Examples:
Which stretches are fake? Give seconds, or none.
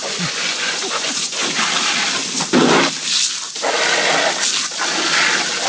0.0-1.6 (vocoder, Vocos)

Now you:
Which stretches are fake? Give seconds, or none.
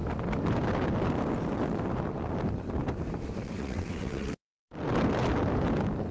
3.4-4.6 (vocoder, WaveNeXt)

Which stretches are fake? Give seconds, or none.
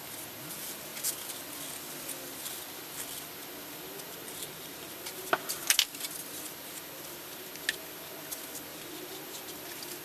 4.2-4.9 (vocoder, BigVGAN v2); 8.7-9.2